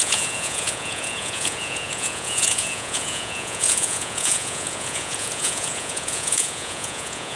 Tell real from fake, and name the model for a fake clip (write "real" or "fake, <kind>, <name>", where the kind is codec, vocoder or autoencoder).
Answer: fake, vocoder, Vocos